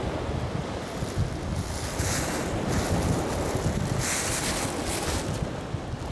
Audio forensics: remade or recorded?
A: recorded